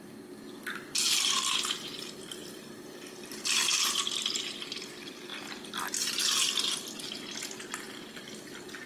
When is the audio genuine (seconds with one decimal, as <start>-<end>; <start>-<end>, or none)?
0.0-8.9